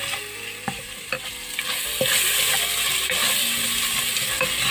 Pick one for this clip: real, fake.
real